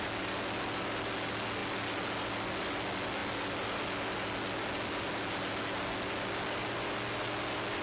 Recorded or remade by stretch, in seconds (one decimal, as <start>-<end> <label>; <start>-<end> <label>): 0.0-7.8 recorded